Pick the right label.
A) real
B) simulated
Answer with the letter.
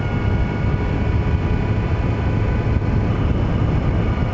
A